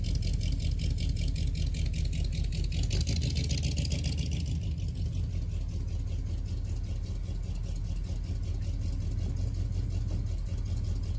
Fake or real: real